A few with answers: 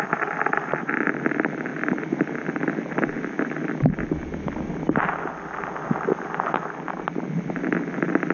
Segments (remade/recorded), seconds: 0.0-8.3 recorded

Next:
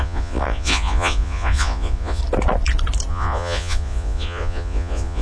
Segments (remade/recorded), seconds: 0.0-2.2 remade; 2.2-3.1 recorded; 3.1-5.2 remade

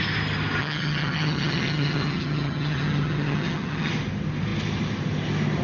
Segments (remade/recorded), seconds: 0.0-0.6 recorded; 0.6-3.9 remade; 3.9-5.6 recorded

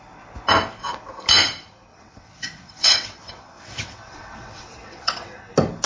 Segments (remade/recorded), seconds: 0.0-1.9 recorded; 1.9-5.4 remade; 5.4-5.9 recorded

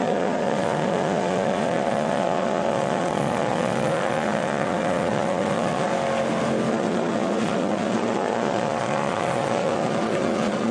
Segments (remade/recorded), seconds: 0.0-5.9 remade; 5.9-6.7 recorded; 6.7-10.7 remade

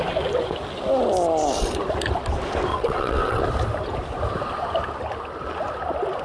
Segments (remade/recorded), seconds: 0.0-2.7 recorded; 2.7-3.4 remade; 3.4-6.2 recorded

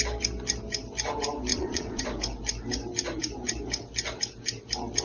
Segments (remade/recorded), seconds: 0.0-1.5 recorded; 1.5-2.0 remade; 2.0-5.0 recorded

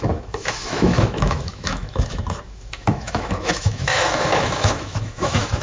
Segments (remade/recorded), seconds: 0.0-5.6 remade